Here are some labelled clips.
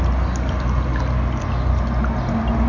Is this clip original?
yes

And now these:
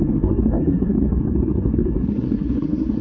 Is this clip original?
no